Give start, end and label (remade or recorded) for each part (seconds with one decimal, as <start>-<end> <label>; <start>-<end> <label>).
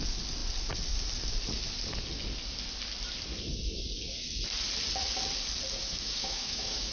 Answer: 0.0-5.8 recorded; 5.8-6.9 remade